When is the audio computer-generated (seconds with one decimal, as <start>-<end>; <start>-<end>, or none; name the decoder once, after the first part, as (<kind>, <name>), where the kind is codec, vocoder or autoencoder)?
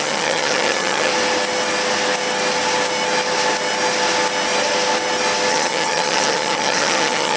0.0-1.1 (vocoder, HiFi-GAN); 5.5-7.4